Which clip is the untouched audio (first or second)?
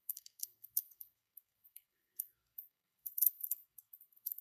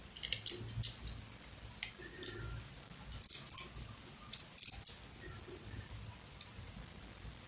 second